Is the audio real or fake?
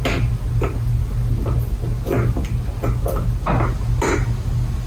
real